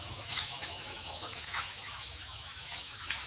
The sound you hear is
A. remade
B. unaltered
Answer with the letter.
A